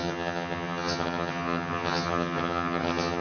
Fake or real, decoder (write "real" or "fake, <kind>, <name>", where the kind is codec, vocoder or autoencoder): fake, vocoder, HiFi-GAN